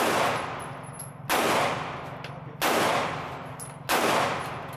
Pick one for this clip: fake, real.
real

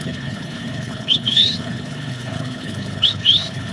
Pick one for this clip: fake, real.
fake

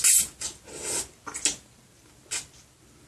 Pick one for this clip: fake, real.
real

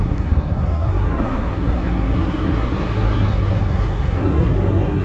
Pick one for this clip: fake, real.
fake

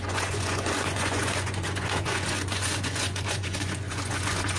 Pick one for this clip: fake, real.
fake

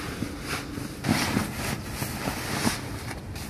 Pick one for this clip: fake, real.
real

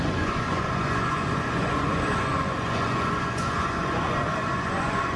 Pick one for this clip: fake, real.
fake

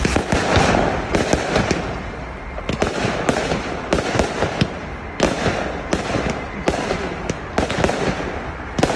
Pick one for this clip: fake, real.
real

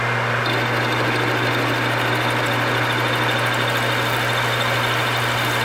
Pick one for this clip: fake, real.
real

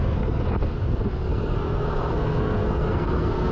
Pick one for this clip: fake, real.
fake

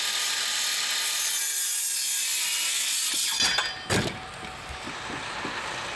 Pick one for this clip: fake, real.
real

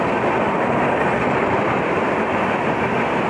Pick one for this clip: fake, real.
real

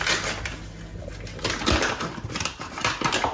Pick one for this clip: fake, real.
real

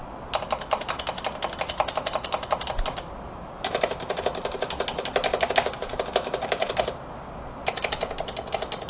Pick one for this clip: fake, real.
real